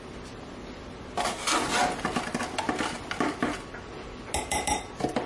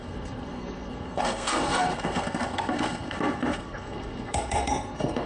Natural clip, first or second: first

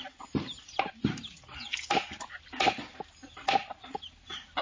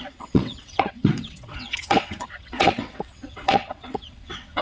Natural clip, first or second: first